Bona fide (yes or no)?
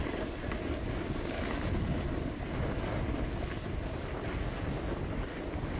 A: yes